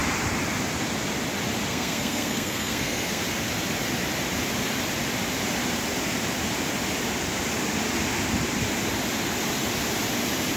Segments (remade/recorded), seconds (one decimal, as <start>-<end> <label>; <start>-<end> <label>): 0.0-1.7 recorded; 1.7-3.2 remade; 3.2-10.6 recorded